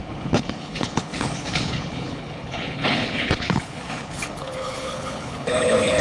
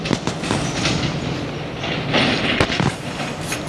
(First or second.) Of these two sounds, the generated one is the first